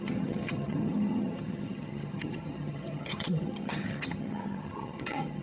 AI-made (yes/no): yes